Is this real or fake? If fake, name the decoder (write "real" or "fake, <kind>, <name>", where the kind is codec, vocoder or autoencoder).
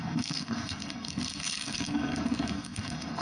fake, codec, SNAC